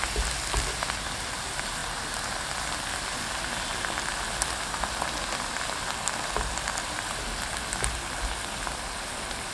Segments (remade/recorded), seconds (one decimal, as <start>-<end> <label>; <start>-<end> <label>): 0.0-9.5 recorded